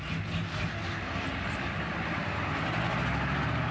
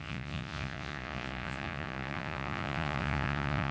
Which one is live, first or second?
first